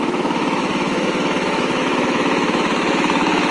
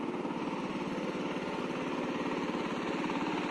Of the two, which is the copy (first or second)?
first